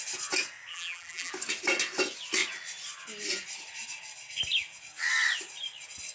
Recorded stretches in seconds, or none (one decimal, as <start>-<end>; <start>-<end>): 0.0-0.7; 1.3-6.1